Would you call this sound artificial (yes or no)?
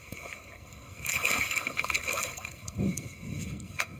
yes